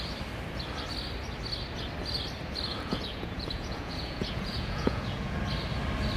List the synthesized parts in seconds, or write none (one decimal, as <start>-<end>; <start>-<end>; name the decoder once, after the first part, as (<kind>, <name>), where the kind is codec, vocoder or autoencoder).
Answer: 2.7-5.4 (vocoder, Vocos)